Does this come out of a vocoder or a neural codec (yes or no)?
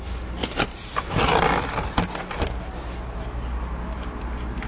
no